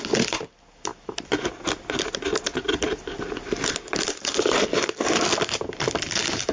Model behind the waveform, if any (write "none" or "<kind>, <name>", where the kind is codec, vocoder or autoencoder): none